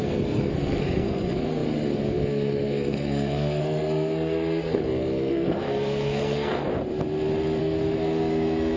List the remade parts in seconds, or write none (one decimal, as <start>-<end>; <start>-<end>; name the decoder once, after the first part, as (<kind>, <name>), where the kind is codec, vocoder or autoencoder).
0.0-6.7 (codec, SNAC); 7.6-8.8